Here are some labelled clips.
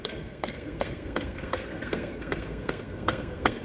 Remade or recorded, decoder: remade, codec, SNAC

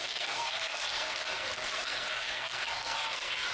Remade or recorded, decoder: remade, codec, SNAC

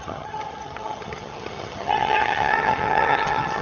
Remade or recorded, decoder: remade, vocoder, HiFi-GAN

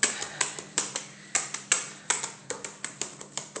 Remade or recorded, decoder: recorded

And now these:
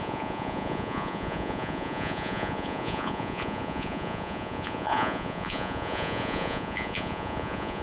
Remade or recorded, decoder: remade, vocoder, Vocos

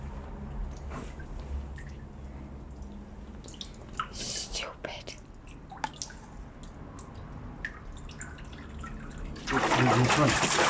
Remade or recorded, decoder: recorded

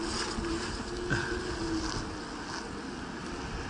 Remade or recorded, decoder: recorded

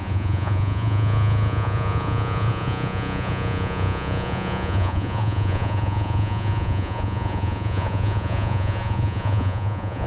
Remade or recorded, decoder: remade, vocoder, Vocos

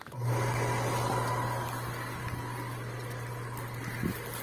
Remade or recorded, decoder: recorded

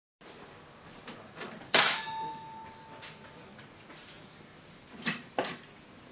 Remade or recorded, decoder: recorded